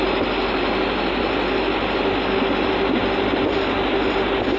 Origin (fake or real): real